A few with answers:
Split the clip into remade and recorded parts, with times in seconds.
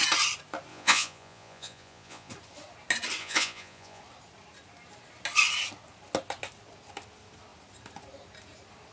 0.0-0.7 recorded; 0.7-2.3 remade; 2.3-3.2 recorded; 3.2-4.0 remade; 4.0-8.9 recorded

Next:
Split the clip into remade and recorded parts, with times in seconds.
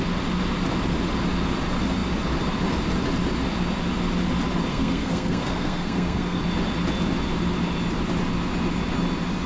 0.0-4.7 recorded; 4.7-6.4 remade; 6.4-9.5 recorded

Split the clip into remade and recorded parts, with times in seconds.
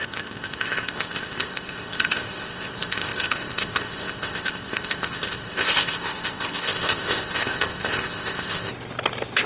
0.0-8.7 remade; 8.7-9.5 recorded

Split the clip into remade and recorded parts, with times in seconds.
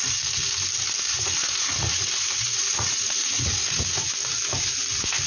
0.0-1.1 recorded; 1.1-4.1 remade; 4.1-5.3 recorded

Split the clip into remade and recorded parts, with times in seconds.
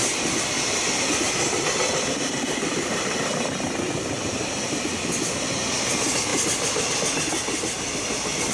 0.0-8.5 recorded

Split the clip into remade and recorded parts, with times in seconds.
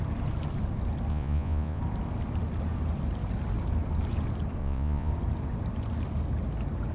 0.0-1.1 recorded; 1.1-1.8 remade; 1.8-4.6 recorded; 4.6-5.1 remade; 5.1-6.9 recorded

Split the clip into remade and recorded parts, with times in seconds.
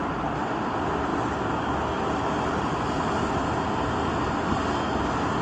0.0-5.4 recorded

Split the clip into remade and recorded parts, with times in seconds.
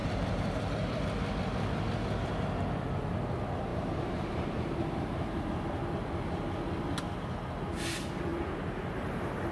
0.0-1.0 remade; 1.0-3.7 recorded; 3.7-5.4 remade; 5.4-8.3 recorded; 8.3-9.5 remade